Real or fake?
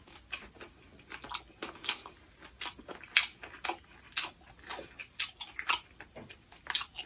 real